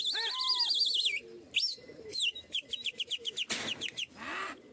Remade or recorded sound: recorded